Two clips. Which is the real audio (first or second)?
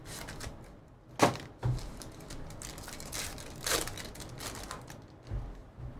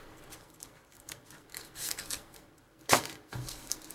first